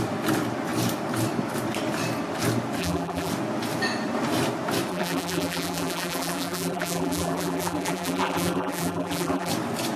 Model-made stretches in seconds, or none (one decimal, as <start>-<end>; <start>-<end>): 2.8-3.3; 4.9-9.5